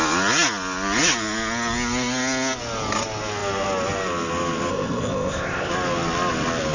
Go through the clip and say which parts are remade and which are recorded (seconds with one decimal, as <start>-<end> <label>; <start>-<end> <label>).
0.0-4.7 recorded; 4.7-5.7 remade; 5.7-6.7 recorded